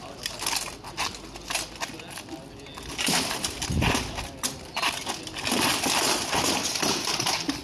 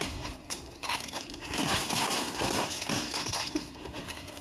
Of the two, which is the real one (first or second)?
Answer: first